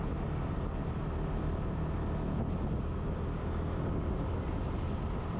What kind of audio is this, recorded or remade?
recorded